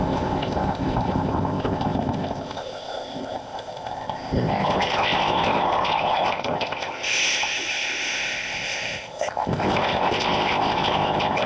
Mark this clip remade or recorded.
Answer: remade